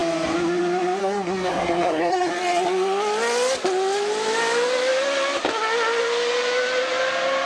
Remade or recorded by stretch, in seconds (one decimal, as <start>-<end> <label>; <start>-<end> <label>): 0.0-1.0 recorded; 1.0-2.3 remade; 2.3-7.5 recorded